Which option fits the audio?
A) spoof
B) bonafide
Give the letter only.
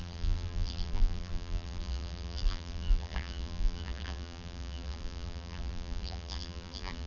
A